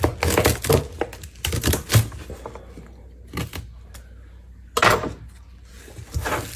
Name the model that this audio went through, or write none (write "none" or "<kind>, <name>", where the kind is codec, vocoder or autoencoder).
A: none